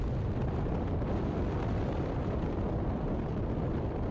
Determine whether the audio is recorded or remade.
remade